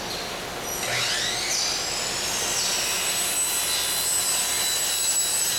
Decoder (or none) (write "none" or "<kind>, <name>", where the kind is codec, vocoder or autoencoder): none